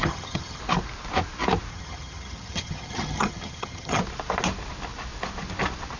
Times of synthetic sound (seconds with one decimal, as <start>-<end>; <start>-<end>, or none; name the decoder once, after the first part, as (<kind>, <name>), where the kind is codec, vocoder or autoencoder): 0.0-0.6 (vocoder, HiFi-GAN); 1.7-4.0